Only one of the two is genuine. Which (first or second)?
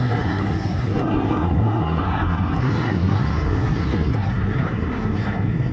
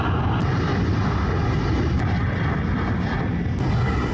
second